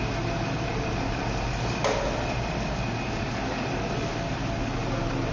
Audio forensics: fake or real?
real